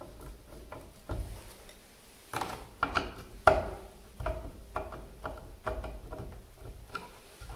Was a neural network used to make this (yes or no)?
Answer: no